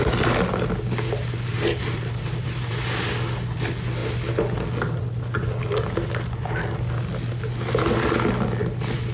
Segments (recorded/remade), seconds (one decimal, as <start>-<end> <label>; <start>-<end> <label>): 0.0-1.5 recorded; 1.5-2.7 remade; 2.7-9.1 recorded